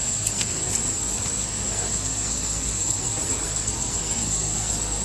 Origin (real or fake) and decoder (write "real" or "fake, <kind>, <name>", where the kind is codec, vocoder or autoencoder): fake, codec, SNAC